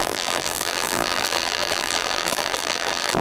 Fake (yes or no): yes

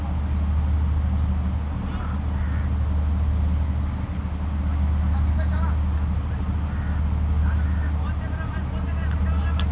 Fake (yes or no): no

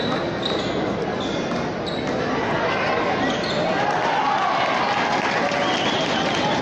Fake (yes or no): no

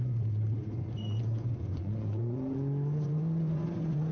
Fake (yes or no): yes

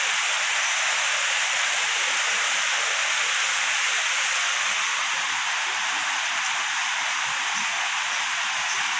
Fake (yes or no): no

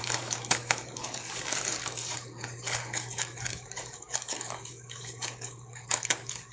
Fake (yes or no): yes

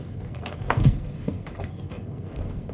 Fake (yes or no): yes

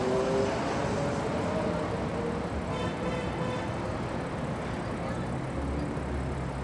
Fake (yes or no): no